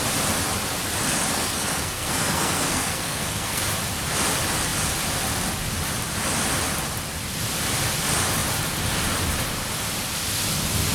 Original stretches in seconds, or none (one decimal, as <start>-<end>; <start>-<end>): 0.0-1.3; 3.6-10.9